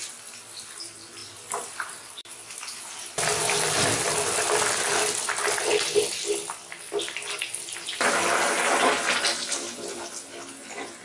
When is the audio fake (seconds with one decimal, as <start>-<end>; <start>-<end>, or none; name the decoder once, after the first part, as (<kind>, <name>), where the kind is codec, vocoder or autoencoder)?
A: 1.2-2.8 (vocoder, BigVGAN v2)